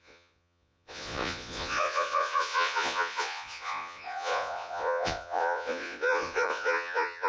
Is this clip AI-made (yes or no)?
yes